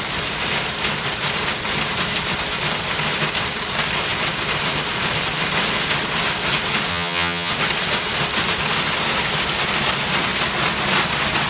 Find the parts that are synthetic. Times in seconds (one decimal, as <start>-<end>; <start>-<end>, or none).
6.9-7.5